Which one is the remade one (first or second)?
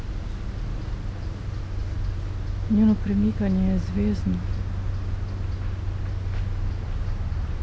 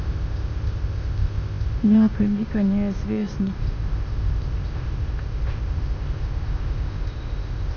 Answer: second